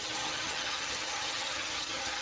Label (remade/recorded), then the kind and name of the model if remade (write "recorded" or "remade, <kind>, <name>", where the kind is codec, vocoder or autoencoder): remade, vocoder, HiFi-GAN